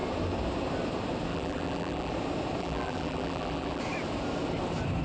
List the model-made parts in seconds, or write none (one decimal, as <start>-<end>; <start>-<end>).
1.3-2.1; 2.6-3.8